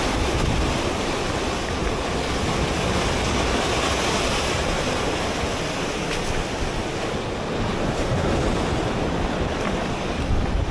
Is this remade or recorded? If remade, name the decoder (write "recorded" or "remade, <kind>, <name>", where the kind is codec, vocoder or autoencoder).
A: recorded